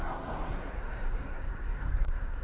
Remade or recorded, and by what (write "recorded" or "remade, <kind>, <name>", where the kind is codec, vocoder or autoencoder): remade, codec, SNAC